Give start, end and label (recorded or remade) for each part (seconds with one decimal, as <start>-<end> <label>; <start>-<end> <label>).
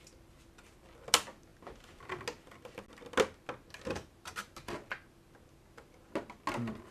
0.0-6.9 recorded